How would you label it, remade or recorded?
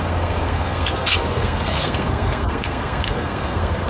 remade